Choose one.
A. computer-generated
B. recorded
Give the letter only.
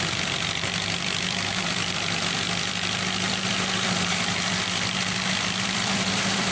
A